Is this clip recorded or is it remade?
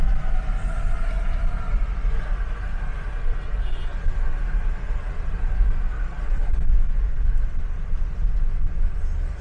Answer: recorded